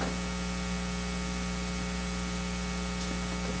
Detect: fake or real real